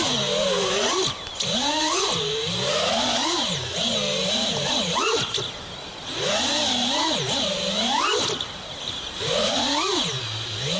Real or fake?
real